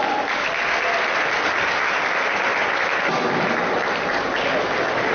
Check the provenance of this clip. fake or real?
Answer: real